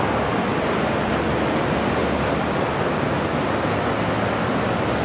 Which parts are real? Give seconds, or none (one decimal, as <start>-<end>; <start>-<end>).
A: 0.0-5.0